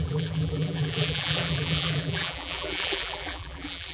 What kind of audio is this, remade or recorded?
remade